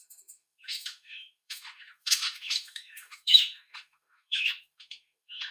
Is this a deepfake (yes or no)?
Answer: yes